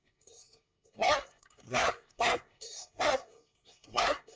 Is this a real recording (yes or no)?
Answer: no